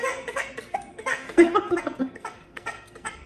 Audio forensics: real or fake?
fake